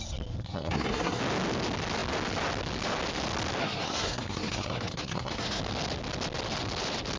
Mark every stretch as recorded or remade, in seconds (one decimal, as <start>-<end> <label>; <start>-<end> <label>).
0.0-0.4 recorded; 0.4-1.2 remade; 1.2-3.6 recorded; 3.6-5.6 remade; 5.6-7.2 recorded